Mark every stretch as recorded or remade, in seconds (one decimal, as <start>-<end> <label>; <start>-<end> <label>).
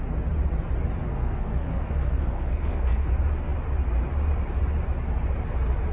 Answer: 0.0-1.1 recorded; 1.1-3.1 remade; 3.1-5.9 recorded